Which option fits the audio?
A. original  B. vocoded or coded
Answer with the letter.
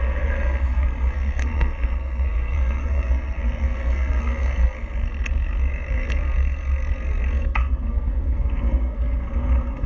B